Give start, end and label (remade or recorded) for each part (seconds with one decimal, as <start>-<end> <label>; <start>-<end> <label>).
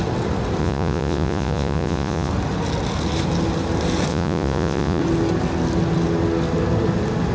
0.0-0.6 recorded; 0.6-2.3 remade; 2.3-4.1 recorded; 4.1-5.0 remade; 5.0-7.3 recorded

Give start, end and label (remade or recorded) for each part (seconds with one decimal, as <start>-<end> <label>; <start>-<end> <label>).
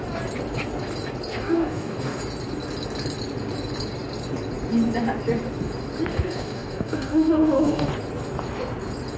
0.0-1.3 recorded; 1.3-2.2 remade; 2.2-6.1 recorded; 6.1-7.9 remade; 7.9-9.2 recorded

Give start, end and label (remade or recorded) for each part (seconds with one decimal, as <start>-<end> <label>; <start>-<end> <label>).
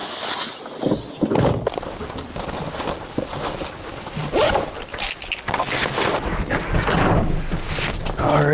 0.0-0.6 remade; 0.6-8.5 recorded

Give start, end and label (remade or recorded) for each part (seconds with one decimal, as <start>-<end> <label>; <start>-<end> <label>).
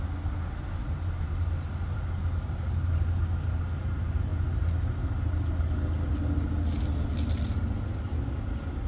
0.0-8.9 recorded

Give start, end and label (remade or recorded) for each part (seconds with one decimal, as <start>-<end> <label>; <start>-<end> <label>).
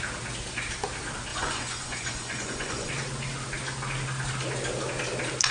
0.0-1.3 recorded; 1.3-2.9 remade; 2.9-5.5 recorded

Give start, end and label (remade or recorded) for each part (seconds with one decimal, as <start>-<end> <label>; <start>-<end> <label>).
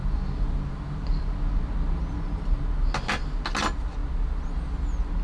0.0-5.2 recorded